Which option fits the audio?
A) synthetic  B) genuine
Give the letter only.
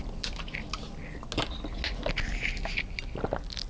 B